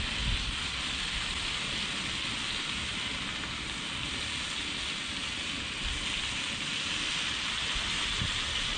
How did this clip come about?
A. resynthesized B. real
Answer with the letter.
B